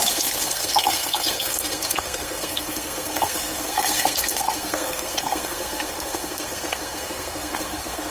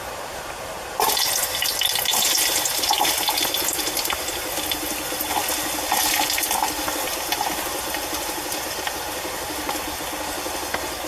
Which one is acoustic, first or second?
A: second